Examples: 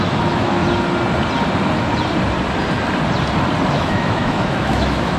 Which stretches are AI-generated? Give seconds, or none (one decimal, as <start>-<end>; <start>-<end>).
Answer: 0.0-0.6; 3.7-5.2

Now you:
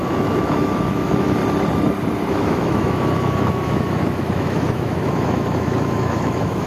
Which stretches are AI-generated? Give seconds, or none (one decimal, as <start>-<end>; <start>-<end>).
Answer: 0.0-1.4; 2.3-6.7

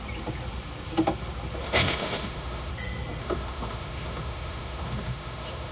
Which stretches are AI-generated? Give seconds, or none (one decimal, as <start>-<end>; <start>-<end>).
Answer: 1.6-2.7; 3.2-5.7

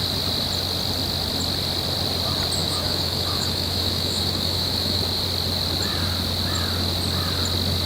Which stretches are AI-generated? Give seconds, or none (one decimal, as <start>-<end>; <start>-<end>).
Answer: 2.6-5.0